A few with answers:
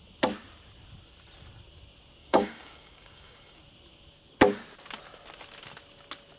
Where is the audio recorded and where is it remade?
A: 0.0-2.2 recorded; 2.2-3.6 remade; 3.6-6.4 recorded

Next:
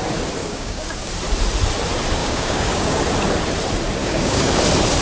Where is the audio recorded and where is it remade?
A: 0.0-0.4 recorded; 0.4-1.1 remade; 1.1-2.2 recorded; 2.2-3.0 remade; 3.0-4.0 recorded; 4.0-4.6 remade; 4.6-5.0 recorded

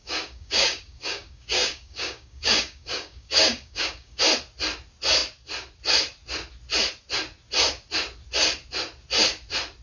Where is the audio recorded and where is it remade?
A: 0.0-4.2 remade; 4.2-9.8 recorded

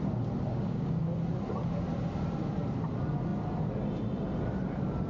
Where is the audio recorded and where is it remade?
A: 0.0-0.5 recorded; 0.5-1.0 remade; 1.0-5.1 recorded

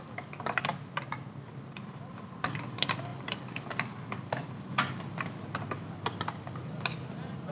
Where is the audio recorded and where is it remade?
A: 0.0-7.5 recorded